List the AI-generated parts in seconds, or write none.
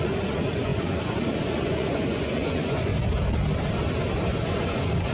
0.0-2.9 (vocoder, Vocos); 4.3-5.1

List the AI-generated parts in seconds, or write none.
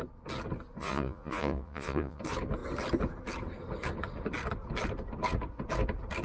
0.8-2.2 (vocoder, Vocos)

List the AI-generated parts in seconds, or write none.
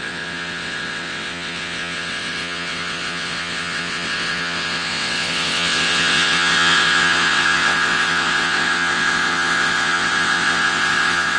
0.0-11.4 (vocoder, WaveNeXt)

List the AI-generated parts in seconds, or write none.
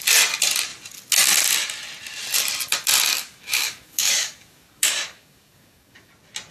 3.1-6.1 (codec, DAC)